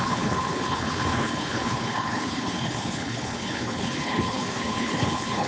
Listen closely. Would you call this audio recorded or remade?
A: remade